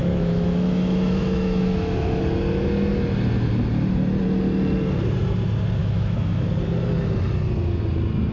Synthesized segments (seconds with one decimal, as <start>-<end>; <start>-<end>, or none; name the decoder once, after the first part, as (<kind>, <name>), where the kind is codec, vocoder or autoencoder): 0.0-2.2 (autoencoder, DAC-VAE); 5.8-6.5